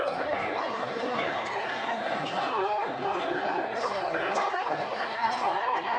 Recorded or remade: remade